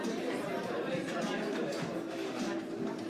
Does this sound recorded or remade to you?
remade